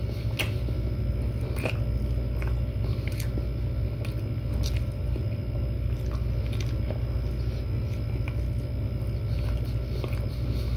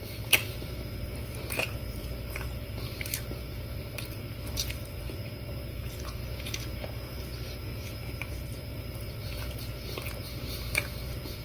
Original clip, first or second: first